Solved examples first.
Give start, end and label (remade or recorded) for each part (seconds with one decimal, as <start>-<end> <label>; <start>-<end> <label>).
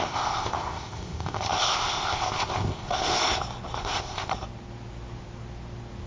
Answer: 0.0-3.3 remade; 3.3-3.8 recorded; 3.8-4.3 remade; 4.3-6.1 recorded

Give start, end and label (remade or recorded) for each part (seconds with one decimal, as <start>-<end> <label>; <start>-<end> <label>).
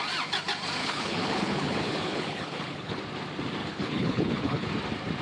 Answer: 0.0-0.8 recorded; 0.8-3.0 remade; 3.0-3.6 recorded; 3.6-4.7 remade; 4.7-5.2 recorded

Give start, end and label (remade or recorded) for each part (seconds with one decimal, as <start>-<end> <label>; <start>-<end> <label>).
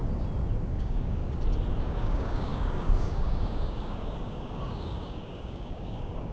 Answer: 0.0-0.7 recorded; 0.7-1.2 remade; 1.2-1.8 recorded; 1.8-6.3 remade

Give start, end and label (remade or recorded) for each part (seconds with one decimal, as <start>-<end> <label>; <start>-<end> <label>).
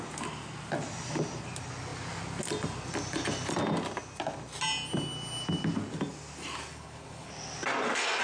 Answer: 0.0-6.7 recorded; 6.7-7.3 remade; 7.3-8.2 recorded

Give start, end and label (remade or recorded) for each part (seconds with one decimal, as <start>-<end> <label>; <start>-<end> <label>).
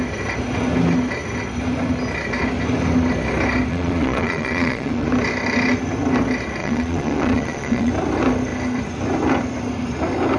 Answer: 0.0-3.7 recorded; 3.7-5.1 remade; 5.1-6.6 recorded; 6.6-7.9 remade; 7.9-10.4 recorded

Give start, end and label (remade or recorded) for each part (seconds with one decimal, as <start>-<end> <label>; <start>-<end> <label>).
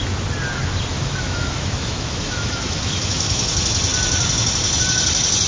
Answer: 0.0-0.9 recorded; 0.9-3.5 remade; 3.5-5.5 recorded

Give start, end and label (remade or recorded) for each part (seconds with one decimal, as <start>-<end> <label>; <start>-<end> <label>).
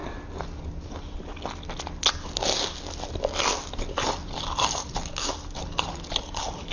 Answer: 0.0-6.7 recorded